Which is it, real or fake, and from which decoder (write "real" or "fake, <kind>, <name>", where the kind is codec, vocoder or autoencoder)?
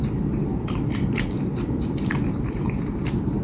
fake, vocoder, BigVGAN v2